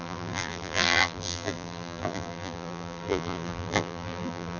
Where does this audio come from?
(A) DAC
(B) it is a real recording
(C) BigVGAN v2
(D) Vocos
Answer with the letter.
C